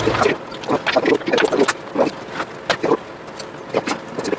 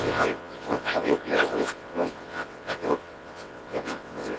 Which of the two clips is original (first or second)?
first